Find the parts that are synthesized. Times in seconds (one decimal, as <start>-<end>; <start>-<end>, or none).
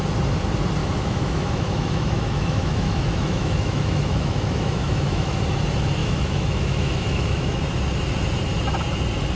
0.8-5.4; 6.0-7.6